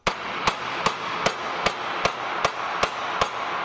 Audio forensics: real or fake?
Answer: real